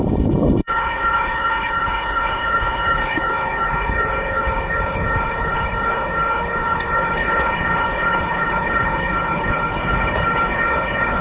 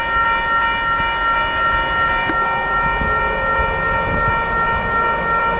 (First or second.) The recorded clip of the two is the second